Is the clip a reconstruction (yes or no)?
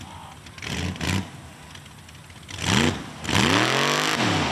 no